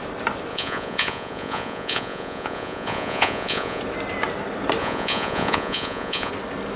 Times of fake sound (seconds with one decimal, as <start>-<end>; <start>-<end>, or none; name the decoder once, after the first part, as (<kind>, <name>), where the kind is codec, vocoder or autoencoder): 0.5-3.8 (vocoder, Vocos); 4.8-6.3

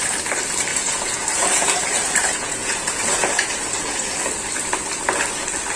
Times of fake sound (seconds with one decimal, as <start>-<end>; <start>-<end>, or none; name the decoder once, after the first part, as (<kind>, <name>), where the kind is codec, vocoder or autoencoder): 0.7-4.2 (vocoder, Vocos)

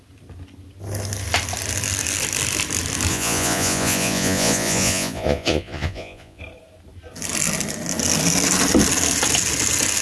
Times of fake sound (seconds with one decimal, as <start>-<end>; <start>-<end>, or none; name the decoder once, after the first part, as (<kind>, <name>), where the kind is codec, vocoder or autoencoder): 3.1-6.4 (vocoder, Vocos)